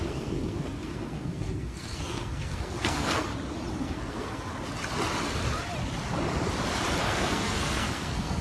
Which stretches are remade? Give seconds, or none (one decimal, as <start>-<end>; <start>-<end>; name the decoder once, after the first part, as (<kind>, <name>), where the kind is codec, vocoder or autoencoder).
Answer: 0.0-3.3 (codec, SNAC); 3.8-4.5; 7.0-8.4